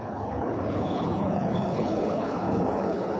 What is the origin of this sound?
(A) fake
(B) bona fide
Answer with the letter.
A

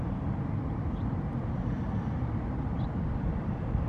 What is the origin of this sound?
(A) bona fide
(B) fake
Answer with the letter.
B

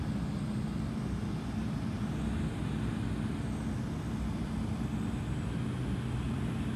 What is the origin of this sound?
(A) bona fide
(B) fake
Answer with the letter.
A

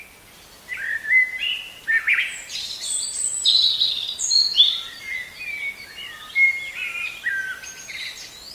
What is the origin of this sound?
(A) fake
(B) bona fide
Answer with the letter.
B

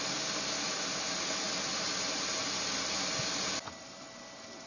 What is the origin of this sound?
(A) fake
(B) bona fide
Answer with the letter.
B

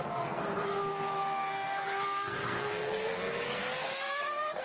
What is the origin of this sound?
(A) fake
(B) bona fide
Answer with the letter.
A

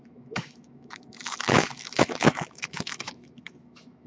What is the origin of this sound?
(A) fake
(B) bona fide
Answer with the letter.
A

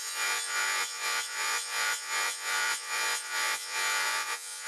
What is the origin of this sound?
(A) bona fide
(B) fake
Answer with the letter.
B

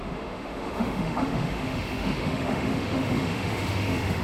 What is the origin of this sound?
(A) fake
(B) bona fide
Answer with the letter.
A